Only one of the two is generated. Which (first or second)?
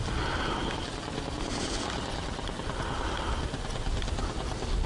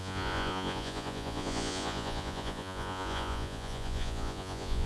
second